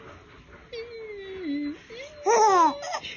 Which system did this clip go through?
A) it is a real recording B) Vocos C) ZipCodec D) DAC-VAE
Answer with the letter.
A